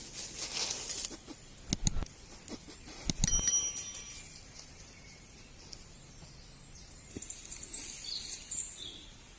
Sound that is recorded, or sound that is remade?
recorded